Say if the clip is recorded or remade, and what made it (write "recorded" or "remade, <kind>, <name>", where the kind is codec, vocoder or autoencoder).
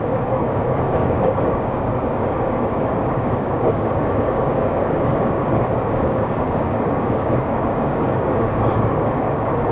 remade, codec, DAC